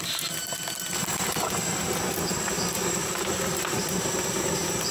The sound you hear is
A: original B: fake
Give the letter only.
B